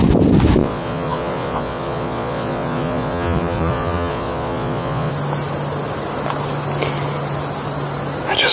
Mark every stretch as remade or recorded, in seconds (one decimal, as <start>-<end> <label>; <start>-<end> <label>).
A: 0.0-0.6 recorded; 0.6-5.1 remade; 5.1-8.5 recorded